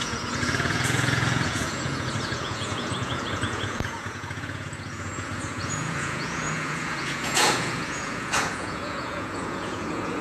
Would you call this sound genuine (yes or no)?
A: no